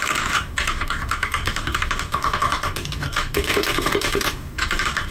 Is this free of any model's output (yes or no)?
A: no